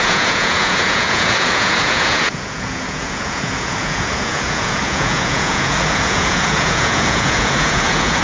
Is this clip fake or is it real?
fake